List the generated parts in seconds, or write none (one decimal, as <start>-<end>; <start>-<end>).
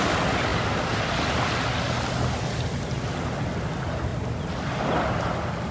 none